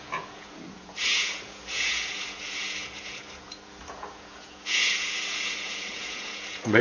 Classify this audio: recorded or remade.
remade